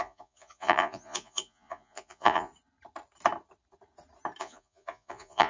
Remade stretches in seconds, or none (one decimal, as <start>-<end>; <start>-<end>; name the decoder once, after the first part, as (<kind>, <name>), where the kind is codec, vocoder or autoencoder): 0.0-2.5 (vocoder, Vocos); 4.4-5.5